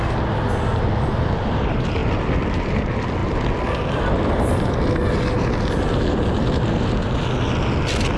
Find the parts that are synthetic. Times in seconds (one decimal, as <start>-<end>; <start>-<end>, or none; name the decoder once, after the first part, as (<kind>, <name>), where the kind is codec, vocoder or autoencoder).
2.0-2.6 (vocoder, BigVGAN v2); 3.2-4.7